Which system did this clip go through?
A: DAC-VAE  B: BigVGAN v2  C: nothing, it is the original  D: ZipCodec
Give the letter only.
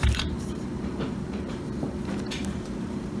B